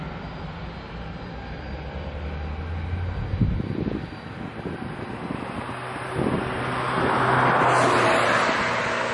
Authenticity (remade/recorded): recorded